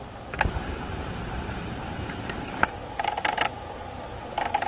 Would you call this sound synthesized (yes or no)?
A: yes